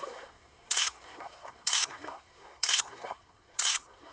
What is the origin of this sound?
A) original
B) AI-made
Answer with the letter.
B